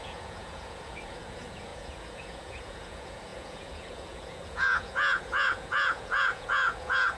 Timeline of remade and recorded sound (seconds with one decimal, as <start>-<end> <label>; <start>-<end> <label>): 0.0-7.2 remade